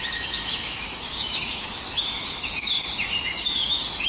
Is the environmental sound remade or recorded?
remade